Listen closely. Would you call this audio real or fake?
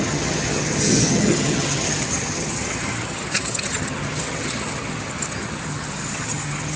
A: fake